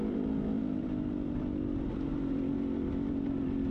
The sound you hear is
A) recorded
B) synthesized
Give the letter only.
A